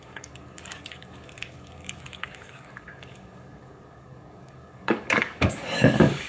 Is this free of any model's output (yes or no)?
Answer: no